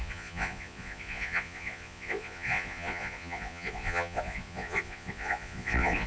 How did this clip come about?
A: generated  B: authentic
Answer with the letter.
A